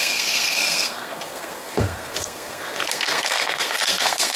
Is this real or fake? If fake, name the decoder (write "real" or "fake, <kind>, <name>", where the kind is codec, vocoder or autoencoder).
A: fake, codec, SNAC